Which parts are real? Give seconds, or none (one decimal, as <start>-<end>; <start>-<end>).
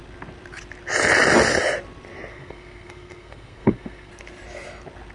0.0-2.3; 4.1-5.1